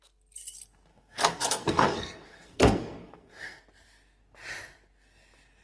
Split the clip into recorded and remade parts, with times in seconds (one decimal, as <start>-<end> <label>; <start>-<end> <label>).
0.0-0.9 recorded; 0.9-3.6 remade; 3.6-5.6 recorded